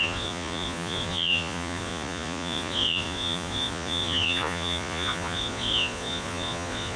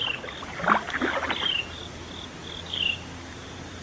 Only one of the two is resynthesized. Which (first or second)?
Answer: first